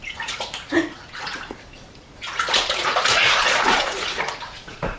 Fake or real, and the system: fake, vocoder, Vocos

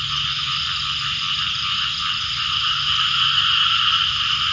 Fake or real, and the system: real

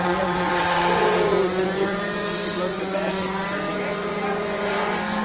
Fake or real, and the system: fake, vocoder, Vocos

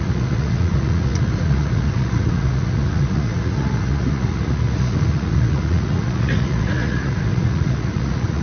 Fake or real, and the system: fake, vocoder, Vocos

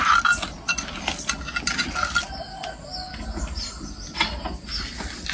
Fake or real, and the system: real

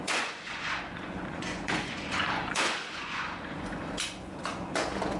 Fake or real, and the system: fake, vocoder, Vocos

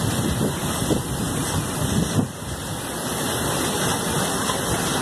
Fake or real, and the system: real